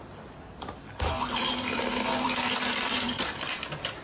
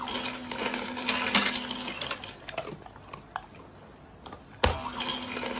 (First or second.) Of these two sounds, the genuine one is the second